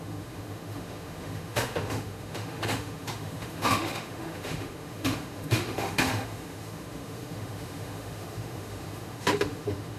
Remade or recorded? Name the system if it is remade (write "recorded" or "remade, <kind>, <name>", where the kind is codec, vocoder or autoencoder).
remade, autoencoder, DAC-VAE